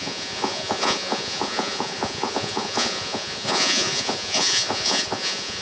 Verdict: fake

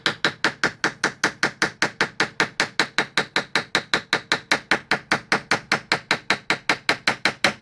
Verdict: real